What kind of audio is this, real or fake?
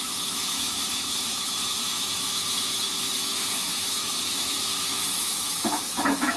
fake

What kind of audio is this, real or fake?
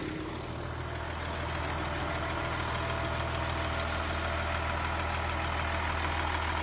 real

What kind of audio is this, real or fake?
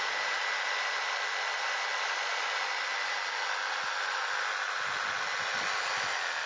real